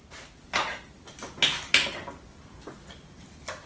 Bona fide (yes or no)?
yes